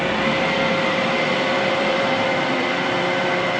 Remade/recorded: remade